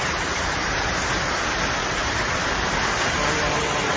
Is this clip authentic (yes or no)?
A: no